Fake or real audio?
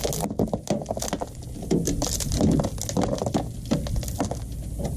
real